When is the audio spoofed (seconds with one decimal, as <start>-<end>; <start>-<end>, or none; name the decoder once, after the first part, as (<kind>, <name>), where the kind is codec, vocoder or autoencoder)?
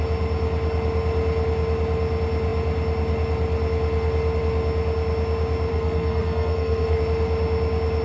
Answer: 5.7-7.0 (codec, SNAC)